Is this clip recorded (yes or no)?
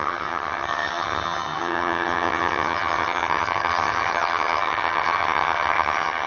no